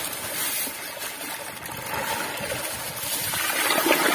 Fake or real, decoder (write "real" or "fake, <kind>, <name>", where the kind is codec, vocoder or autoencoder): real